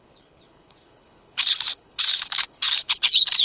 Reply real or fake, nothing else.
fake